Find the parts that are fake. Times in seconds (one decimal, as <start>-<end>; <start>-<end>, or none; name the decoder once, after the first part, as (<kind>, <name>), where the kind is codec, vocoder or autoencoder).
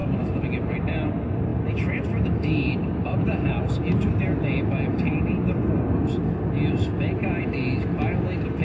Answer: none